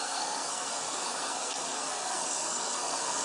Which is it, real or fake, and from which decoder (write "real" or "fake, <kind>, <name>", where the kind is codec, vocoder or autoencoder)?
fake, codec, SNAC